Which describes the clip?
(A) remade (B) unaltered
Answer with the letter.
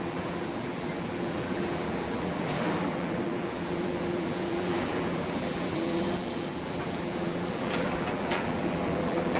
A